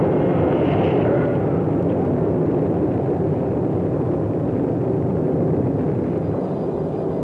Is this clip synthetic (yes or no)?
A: no